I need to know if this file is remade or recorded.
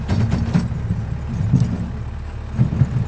recorded